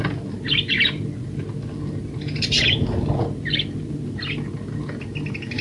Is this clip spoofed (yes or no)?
no